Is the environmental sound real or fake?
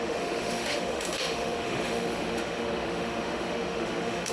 fake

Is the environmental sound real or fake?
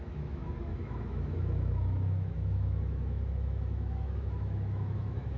fake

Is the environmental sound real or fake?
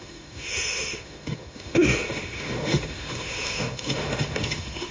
fake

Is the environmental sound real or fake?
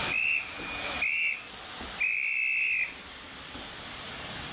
real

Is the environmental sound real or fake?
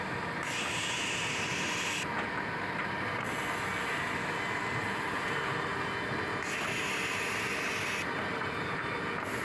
real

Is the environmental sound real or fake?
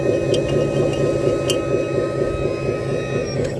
real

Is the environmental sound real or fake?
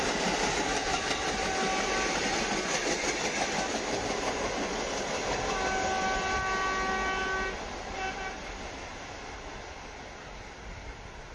real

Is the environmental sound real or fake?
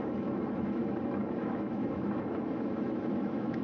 fake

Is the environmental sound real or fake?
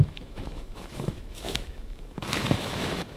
fake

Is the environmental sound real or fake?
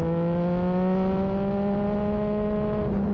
real